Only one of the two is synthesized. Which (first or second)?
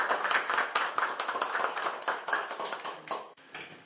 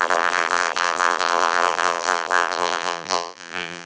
second